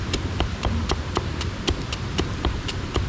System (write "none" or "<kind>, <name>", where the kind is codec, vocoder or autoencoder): none